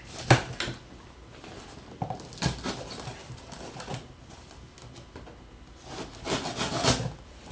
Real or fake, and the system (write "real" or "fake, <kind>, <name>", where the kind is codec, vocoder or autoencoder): real